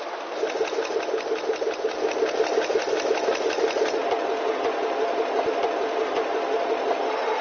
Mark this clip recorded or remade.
recorded